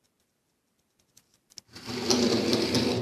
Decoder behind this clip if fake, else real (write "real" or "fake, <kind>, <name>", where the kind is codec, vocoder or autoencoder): fake, vocoder, BigVGAN v2